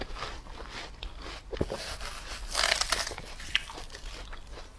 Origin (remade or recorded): recorded